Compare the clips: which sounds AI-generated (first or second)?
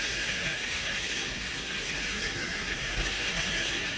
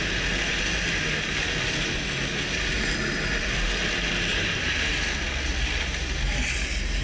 first